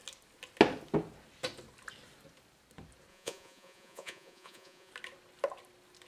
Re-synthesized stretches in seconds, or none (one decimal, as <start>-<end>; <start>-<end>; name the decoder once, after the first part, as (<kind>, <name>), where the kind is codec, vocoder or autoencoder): 3.1-4.9 (vocoder, Vocos)